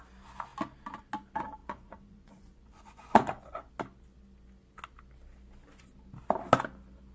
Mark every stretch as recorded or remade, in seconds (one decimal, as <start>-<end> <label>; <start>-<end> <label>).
0.0-1.6 recorded; 1.6-3.7 remade; 3.7-7.1 recorded